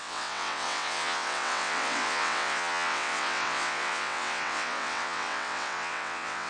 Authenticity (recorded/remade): remade